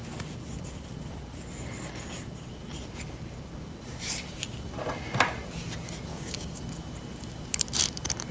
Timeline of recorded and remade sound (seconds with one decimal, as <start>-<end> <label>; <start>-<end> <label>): 0.0-6.1 recorded; 6.1-6.6 remade; 6.6-8.3 recorded